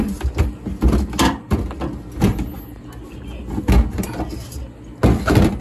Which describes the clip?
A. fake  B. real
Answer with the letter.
B